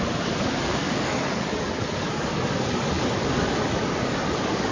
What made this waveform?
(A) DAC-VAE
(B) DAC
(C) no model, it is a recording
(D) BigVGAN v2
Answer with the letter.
B